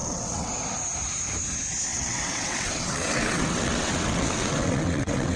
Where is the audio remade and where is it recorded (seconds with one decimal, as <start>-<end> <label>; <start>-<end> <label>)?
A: 0.0-0.5 remade; 0.5-1.9 recorded; 1.9-5.4 remade